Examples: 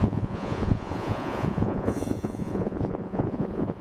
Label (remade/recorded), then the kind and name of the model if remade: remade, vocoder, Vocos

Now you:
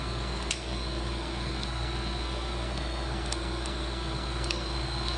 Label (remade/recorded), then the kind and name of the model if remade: remade, codec, SNAC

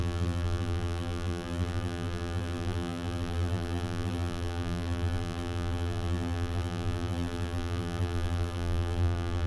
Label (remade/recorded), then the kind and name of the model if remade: remade, vocoder, BigVGAN v2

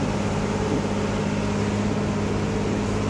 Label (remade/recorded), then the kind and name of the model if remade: recorded